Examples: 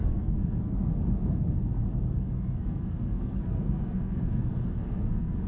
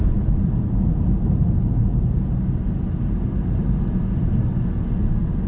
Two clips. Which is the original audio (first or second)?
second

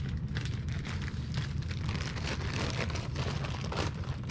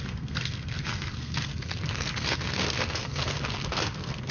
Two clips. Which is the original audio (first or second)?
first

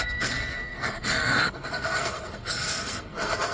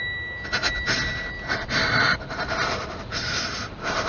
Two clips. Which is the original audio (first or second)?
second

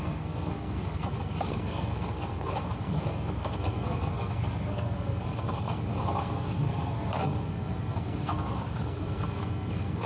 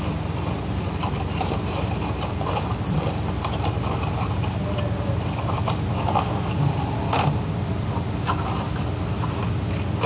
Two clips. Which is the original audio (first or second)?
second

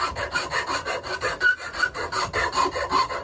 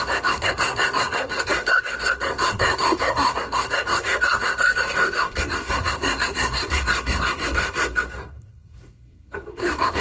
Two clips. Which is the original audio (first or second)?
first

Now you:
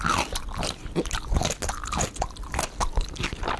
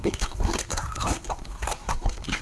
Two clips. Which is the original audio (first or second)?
first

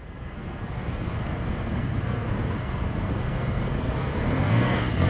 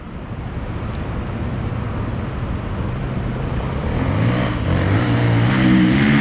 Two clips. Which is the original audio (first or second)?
second